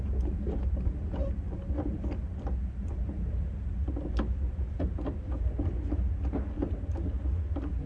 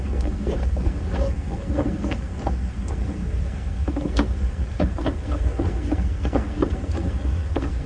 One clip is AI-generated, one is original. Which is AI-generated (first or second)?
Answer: second